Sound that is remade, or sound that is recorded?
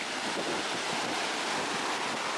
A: recorded